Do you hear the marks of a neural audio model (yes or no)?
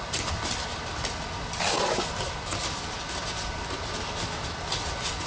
no